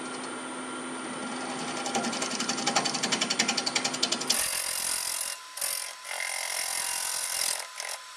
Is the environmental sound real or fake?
real